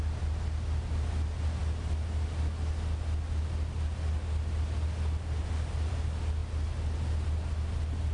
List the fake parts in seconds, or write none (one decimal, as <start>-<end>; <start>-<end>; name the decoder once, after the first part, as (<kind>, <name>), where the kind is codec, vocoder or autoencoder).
none